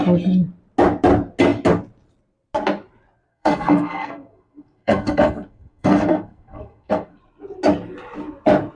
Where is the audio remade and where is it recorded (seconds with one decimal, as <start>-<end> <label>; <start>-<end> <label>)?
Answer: 0.0-3.3 recorded; 3.3-7.2 remade; 7.2-8.8 recorded